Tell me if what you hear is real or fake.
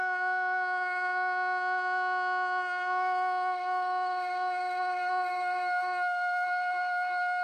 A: fake